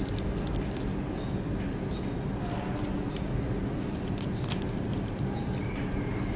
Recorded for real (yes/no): yes